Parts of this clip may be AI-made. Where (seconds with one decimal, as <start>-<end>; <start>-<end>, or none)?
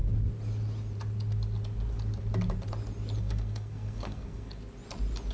3.2-4.6